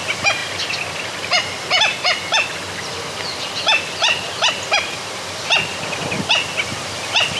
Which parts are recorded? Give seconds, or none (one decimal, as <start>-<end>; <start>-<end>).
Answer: 0.0-7.4